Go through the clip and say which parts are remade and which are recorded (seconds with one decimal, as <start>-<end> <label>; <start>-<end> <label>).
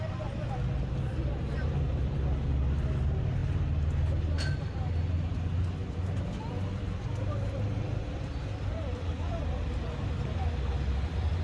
0.0-11.4 recorded